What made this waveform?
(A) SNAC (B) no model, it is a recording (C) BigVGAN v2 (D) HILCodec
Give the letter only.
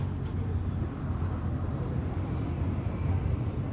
C